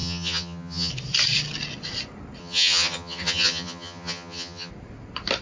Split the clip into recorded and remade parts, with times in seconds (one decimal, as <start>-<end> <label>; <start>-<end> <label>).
0.0-0.9 remade; 0.9-2.4 recorded; 2.4-4.7 remade; 4.7-5.4 recorded